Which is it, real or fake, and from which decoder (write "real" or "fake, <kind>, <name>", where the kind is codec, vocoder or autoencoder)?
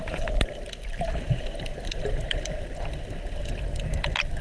real